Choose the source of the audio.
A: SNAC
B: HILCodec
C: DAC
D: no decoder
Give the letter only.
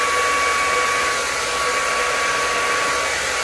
D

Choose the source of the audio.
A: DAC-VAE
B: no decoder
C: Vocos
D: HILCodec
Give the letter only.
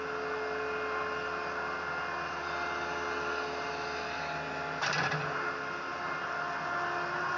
B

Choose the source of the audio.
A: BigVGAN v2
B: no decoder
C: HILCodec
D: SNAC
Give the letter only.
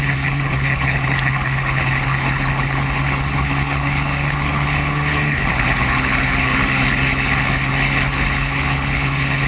C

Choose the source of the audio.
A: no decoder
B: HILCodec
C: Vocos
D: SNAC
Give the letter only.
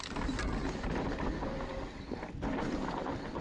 A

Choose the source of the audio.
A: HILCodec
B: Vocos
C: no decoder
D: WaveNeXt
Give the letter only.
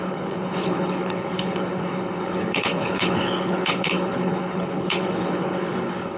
A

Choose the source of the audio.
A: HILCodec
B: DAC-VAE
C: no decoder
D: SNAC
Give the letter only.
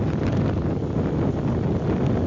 C